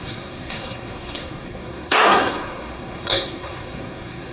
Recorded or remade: remade